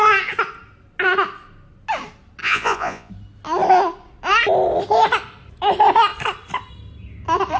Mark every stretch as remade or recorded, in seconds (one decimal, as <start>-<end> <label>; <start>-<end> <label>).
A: 0.0-2.4 recorded; 2.4-3.1 remade; 3.1-7.6 recorded